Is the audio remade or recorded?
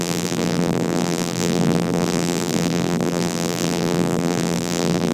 remade